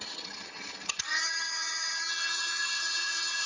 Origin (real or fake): fake